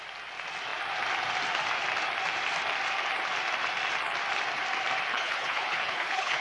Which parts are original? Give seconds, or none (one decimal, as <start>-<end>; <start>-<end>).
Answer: 0.0-5.1